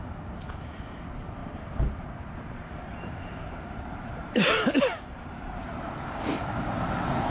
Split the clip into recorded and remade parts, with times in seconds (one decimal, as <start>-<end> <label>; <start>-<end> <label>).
0.0-1.4 recorded; 1.4-5.8 remade; 5.8-7.3 recorded

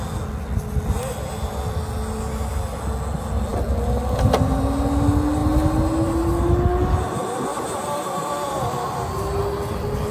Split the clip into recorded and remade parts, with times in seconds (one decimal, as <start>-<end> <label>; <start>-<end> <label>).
0.0-10.1 recorded

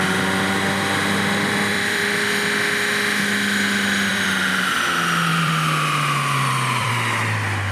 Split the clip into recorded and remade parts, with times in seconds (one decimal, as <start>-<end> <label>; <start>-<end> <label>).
0.0-1.7 recorded; 1.7-2.3 remade; 2.3-4.1 recorded; 4.1-4.7 remade; 4.7-5.3 recorded; 5.3-6.9 remade; 6.9-7.7 recorded

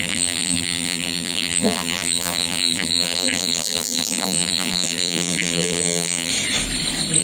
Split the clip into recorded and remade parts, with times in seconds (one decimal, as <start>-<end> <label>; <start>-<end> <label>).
0.0-6.3 remade; 6.3-7.2 recorded

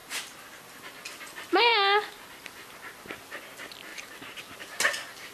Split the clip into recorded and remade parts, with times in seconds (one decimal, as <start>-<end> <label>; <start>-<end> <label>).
0.0-0.6 remade; 0.6-3.9 recorded; 3.9-4.4 remade; 4.4-5.3 recorded

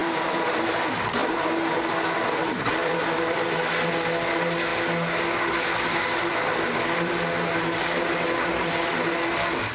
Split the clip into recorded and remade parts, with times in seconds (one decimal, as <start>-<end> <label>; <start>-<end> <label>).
0.0-0.7 remade; 0.7-2.8 recorded; 2.8-3.6 remade; 3.6-9.7 recorded

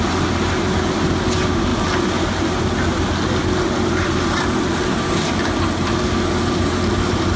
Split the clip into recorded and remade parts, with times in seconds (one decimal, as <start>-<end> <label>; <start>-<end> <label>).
0.0-7.4 recorded